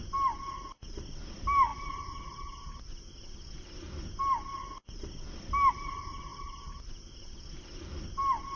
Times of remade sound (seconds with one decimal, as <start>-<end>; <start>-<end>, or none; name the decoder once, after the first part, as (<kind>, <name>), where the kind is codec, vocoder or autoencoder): none